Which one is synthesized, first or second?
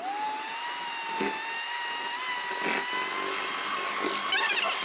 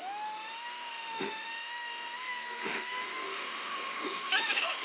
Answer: second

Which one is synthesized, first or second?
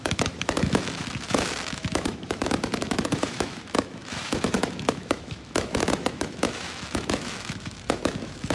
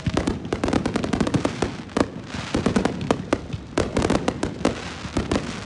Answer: first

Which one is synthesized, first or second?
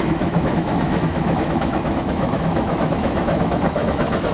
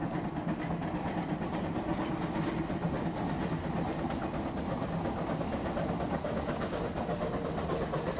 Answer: first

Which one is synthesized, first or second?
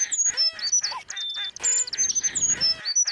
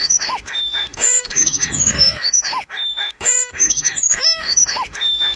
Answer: second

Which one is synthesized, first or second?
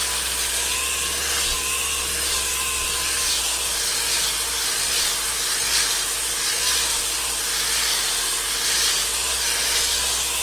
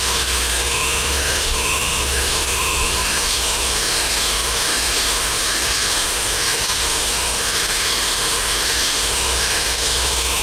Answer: second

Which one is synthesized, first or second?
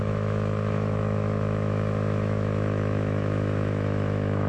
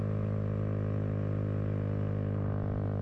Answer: first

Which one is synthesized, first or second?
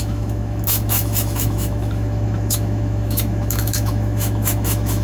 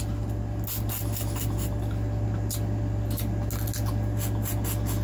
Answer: first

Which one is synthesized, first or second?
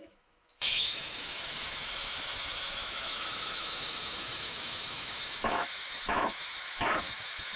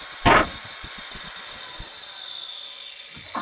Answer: first